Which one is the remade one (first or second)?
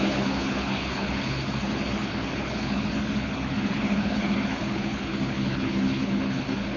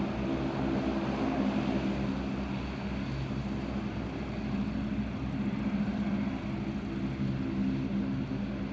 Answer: first